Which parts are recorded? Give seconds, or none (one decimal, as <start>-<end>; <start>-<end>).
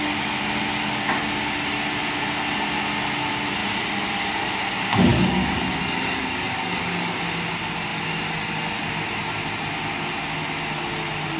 0.0-5.1; 7.2-11.4